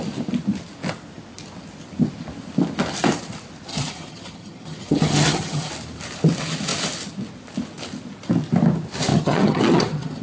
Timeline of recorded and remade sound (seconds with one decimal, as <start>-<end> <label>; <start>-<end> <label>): 0.0-3.7 recorded; 3.7-5.7 remade; 5.7-9.1 recorded; 9.1-10.2 remade